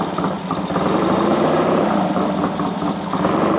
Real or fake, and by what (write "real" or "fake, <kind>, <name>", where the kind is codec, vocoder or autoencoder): real